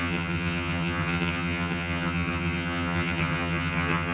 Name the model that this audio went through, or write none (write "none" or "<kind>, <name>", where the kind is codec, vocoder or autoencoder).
vocoder, HiFi-GAN